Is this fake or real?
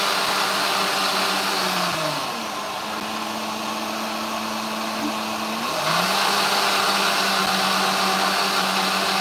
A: real